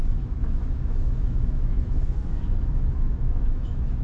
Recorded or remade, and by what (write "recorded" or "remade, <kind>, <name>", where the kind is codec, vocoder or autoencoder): remade, autoencoder, DAC-VAE